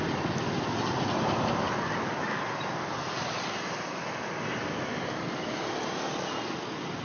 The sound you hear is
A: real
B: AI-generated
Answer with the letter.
A